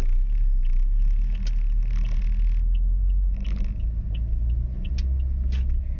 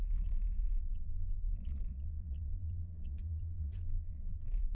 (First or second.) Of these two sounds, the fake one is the second